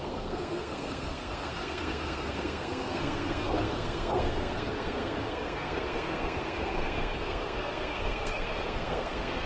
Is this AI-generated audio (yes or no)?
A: yes